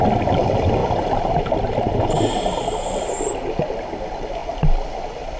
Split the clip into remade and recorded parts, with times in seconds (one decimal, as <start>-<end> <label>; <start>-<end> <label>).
0.0-5.4 recorded